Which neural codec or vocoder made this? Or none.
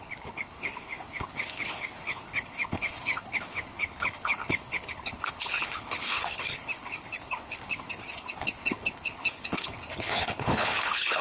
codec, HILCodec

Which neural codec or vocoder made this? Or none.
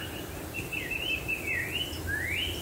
none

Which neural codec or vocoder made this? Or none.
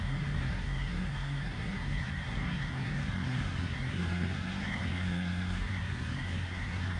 codec, SNAC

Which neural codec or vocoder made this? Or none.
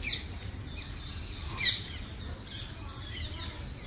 none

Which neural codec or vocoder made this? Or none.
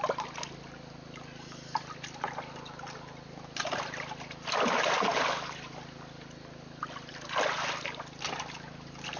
none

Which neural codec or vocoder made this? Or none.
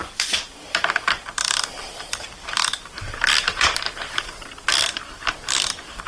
vocoder, BigVGAN v2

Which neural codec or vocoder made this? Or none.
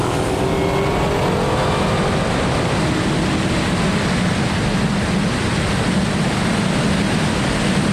none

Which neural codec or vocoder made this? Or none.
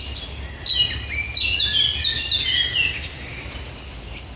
none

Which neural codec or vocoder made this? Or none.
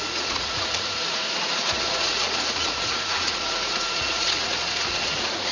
vocoder, Vocos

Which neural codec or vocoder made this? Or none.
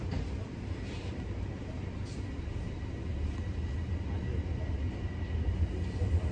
none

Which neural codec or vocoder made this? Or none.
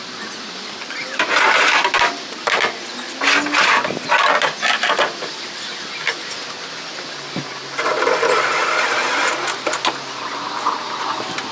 none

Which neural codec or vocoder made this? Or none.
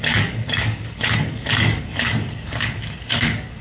codec, DAC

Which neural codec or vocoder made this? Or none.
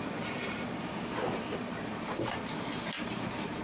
vocoder, BigVGAN v2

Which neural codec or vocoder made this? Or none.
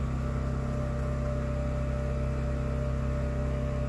none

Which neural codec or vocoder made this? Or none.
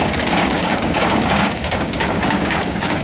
codec, DAC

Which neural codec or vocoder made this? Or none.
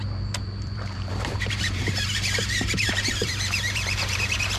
vocoder, BigVGAN v2